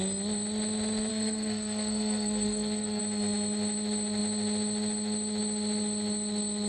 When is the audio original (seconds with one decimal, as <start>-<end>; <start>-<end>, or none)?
0.0-1.1; 3.0-6.7

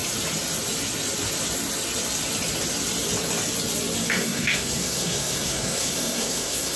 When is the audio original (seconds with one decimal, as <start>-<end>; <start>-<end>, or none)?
0.0-4.1

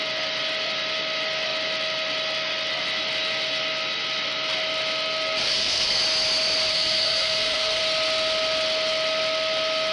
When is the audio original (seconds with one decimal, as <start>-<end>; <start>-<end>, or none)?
0.0-5.4; 6.0-6.7; 7.8-9.9